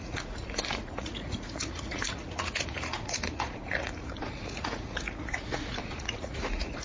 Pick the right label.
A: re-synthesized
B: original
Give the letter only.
A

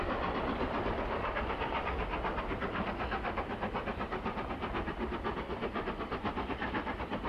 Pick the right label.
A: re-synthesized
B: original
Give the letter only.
B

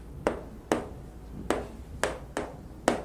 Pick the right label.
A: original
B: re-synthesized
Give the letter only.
A